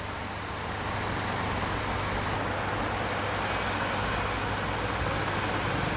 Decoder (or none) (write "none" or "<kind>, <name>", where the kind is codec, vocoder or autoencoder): none